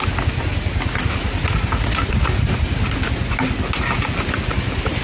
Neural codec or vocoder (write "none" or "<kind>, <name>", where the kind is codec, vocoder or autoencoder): none